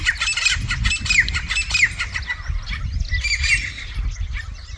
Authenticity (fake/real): real